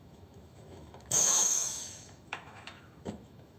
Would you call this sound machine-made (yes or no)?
yes